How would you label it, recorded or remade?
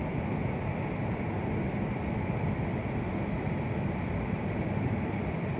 recorded